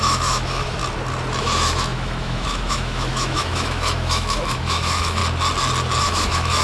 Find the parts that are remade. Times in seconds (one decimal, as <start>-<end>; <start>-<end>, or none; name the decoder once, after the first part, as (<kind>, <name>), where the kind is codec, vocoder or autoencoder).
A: 0.0-0.8 (autoencoder, DAC-VAE); 1.4-5.2; 6.0-6.6